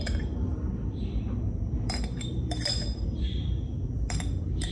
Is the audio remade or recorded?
remade